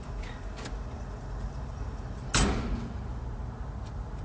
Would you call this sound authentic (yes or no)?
yes